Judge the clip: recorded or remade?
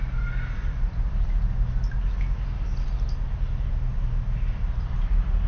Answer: recorded